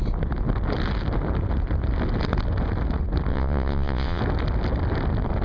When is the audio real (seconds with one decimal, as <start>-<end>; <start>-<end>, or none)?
0.0-3.3; 4.2-5.4